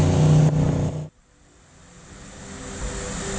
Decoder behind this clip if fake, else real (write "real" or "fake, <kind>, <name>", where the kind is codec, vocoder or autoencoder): real